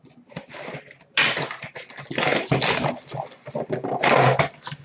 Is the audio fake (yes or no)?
no